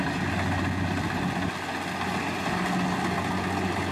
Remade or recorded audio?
recorded